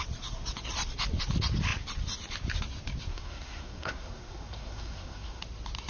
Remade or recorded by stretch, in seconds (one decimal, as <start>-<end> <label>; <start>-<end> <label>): 0.0-3.1 recorded; 3.1-5.4 remade; 5.4-5.9 recorded